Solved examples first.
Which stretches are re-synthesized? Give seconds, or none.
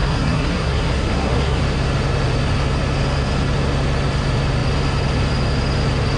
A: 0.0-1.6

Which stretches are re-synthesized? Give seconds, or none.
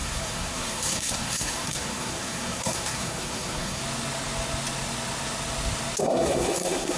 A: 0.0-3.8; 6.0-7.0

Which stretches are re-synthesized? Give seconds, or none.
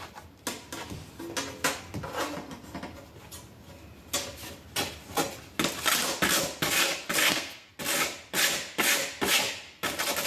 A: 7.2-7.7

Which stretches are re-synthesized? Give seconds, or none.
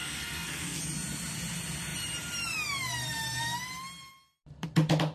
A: 0.0-0.8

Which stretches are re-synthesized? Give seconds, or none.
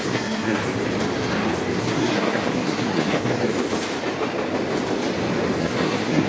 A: 0.0-0.6; 1.8-3.5; 5.6-6.3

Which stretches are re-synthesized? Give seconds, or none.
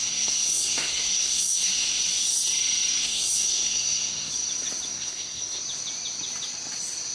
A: 0.0-2.0; 2.9-4.3; 4.9-5.6